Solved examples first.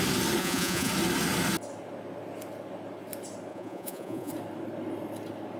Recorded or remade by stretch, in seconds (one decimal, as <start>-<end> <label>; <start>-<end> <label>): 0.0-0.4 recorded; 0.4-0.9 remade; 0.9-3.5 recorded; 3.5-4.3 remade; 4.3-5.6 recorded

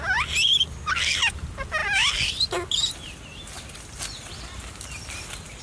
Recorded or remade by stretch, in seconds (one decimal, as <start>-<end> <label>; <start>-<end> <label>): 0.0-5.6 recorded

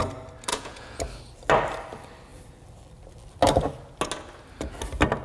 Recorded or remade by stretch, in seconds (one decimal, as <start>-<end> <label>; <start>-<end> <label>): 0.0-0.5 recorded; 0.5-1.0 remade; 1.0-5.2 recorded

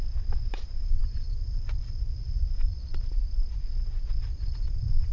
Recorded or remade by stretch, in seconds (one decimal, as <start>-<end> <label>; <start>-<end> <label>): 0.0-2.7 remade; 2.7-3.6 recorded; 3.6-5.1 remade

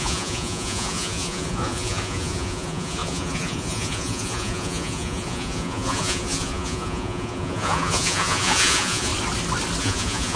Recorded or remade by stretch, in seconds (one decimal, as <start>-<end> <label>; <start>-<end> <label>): 0.0-9.1 remade; 9.1-9.8 recorded; 9.8-10.4 remade